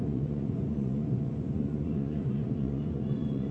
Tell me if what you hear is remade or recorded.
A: remade